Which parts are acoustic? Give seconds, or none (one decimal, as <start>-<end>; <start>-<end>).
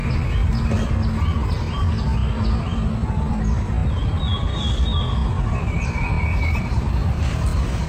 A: 0.0-6.4; 7.2-7.9